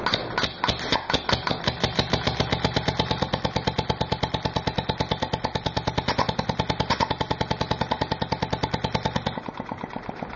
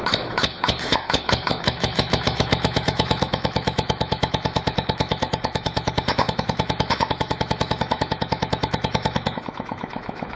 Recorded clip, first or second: first